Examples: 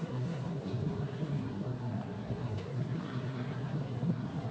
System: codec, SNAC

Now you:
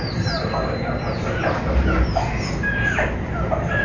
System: none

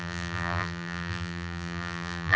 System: vocoder, BigVGAN v2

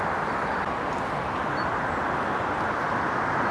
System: none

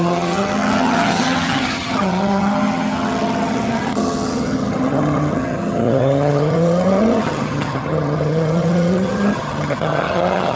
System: vocoder, HiFi-GAN